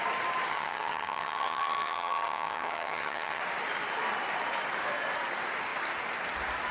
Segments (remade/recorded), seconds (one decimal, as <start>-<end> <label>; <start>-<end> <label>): 0.0-0.5 recorded; 0.5-3.4 remade; 3.4-6.7 recorded

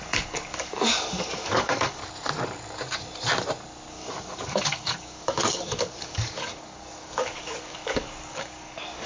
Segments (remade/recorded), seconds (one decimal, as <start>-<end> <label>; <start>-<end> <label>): 0.0-2.0 remade; 2.0-3.9 recorded; 3.9-9.1 remade

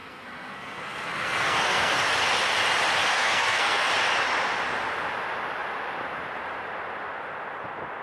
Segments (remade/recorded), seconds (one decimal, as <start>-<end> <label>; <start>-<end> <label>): 0.0-2.0 remade; 2.0-3.1 recorded; 3.1-3.9 remade; 3.9-8.0 recorded

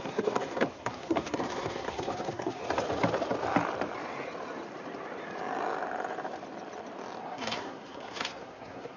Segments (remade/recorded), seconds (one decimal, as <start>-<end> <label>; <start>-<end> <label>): 0.0-2.6 remade; 2.6-7.2 recorded; 7.2-9.0 remade